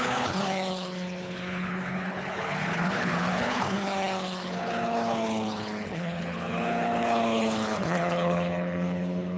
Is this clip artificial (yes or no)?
yes